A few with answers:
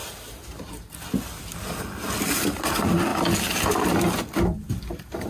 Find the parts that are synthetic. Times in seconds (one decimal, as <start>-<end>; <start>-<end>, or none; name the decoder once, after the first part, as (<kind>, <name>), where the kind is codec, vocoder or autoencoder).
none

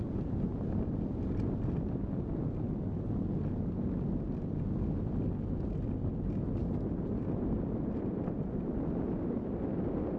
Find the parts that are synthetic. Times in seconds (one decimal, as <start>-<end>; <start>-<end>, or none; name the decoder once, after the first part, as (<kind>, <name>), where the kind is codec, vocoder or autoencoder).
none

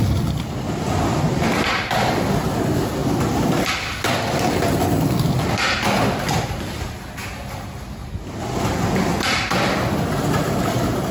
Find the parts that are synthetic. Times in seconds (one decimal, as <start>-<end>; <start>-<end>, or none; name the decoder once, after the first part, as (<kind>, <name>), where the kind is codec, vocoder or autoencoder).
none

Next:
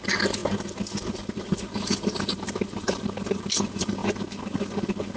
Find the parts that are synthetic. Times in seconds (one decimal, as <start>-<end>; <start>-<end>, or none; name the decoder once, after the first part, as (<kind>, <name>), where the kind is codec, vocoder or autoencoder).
0.0-0.4 (vocoder, BigVGAN v2); 1.1-4.0

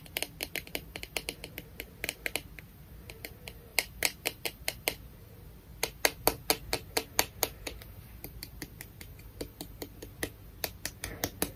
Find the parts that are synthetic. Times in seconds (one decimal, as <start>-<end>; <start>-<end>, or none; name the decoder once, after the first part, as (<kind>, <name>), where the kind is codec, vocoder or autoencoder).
none

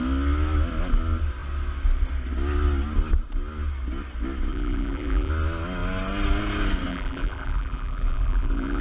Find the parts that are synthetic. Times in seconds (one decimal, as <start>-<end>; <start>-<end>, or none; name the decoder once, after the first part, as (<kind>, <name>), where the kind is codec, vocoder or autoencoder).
4.5-5.3 (vocoder, BigVGAN v2); 6.9-8.8

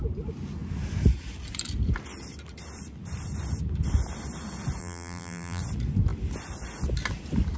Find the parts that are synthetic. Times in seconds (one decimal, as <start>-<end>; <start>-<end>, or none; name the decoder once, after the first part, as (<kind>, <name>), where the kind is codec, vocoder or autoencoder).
4.8-5.6 (vocoder, BigVGAN v2)